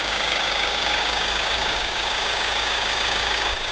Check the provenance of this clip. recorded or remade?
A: remade